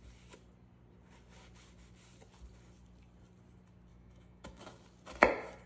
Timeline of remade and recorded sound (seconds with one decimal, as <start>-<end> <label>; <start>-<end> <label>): 0.0-3.9 recorded; 3.9-4.6 remade; 4.6-5.7 recorded